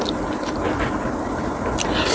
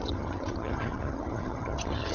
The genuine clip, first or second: first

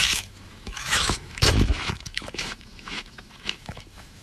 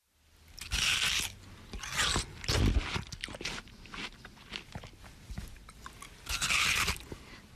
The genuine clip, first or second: second